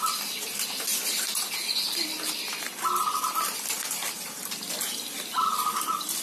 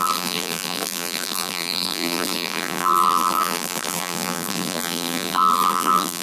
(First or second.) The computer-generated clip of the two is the second